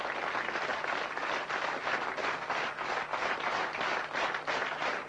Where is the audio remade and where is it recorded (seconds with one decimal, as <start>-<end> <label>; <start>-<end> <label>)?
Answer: 0.0-5.1 recorded